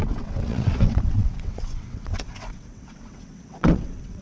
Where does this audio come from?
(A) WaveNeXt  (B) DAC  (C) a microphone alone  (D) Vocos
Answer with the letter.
A